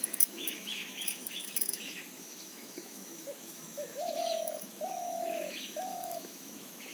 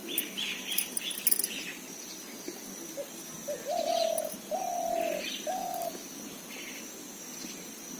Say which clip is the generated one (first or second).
first